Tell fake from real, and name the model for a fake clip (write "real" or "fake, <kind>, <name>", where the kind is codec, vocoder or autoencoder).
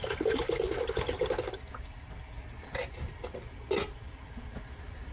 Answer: real